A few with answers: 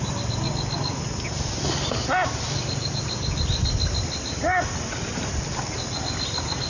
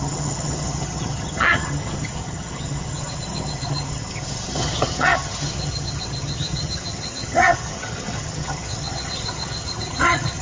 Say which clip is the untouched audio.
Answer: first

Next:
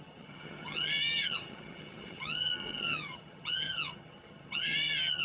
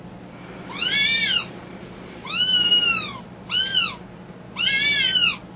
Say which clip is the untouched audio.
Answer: second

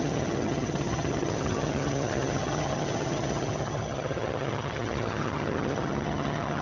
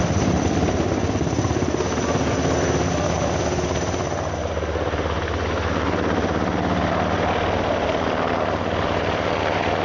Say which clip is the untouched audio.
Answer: second